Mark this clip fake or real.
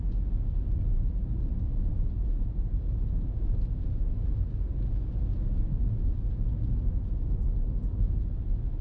real